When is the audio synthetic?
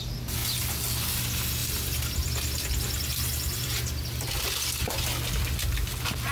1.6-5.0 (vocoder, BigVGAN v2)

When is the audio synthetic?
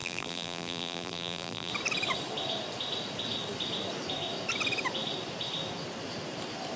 0.0-1.7 (vocoder, BigVGAN v2)